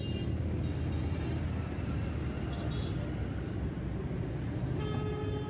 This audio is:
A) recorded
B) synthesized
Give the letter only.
A